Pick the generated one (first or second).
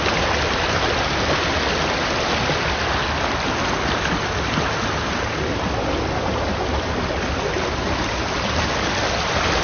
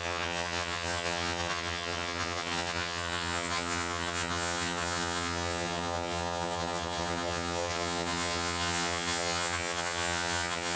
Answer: second